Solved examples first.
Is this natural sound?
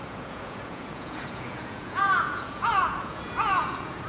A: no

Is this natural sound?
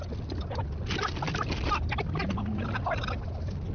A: yes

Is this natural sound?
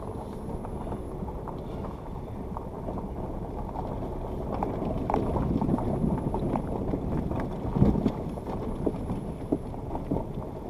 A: yes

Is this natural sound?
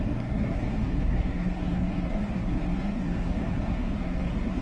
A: no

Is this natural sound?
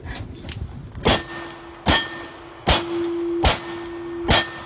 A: yes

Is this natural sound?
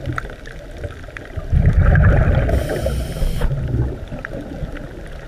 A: yes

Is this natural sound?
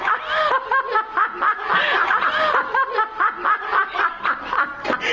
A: yes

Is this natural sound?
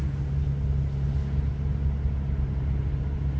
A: yes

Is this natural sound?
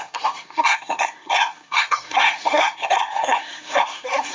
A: no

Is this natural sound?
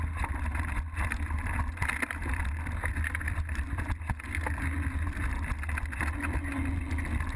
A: yes